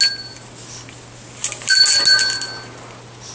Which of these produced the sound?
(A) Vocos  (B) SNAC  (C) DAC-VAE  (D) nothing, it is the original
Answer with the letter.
D